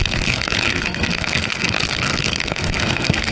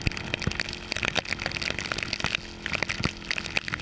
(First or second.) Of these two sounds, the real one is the second